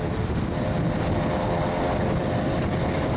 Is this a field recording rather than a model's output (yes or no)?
yes